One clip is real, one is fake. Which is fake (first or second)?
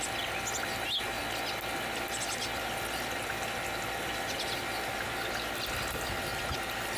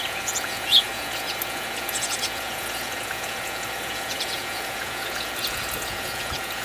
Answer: second